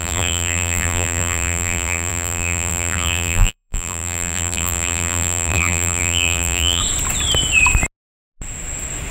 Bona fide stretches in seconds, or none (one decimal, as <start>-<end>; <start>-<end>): 6.8-9.1